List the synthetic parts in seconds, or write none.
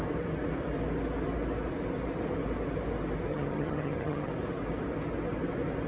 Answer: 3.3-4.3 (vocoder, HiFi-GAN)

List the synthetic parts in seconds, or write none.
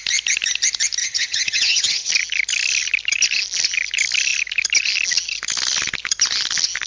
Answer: 1.0-2.1 (vocoder, HiFi-GAN)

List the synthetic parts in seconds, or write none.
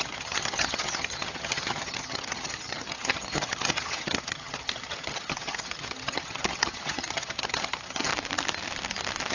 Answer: 0.0-8.1 (vocoder, HiFi-GAN)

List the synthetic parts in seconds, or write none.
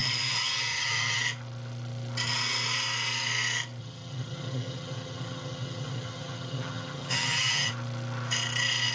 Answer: 0.0-1.2 (vocoder, HiFi-GAN); 3.8-7.7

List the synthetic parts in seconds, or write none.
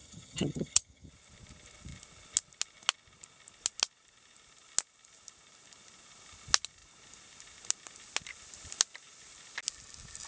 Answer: 0.0-1.1 (vocoder, HiFi-GAN)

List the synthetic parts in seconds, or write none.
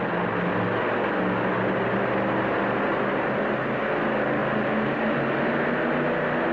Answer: none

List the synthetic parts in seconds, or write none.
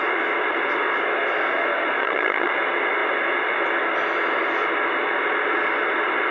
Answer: 2.0-2.5 (vocoder, HiFi-GAN)